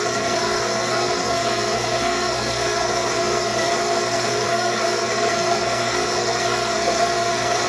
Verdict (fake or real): fake